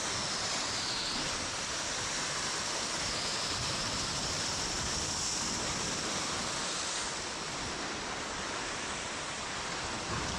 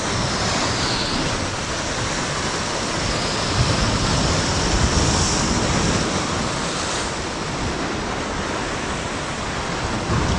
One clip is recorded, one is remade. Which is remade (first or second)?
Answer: first